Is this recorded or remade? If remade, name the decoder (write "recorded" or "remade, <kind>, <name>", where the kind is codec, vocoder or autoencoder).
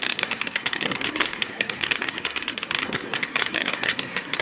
remade, codec, SNAC